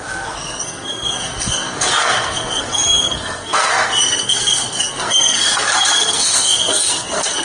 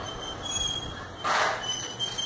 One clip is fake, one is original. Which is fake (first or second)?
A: first